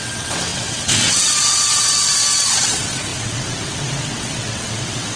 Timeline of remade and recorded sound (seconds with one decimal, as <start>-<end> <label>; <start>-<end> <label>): 0.0-5.2 remade